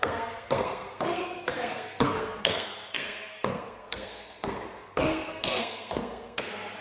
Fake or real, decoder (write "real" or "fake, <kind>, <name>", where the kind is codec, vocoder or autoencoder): fake, codec, SNAC